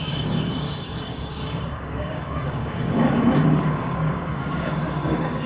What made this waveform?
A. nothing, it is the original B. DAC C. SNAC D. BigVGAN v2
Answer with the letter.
B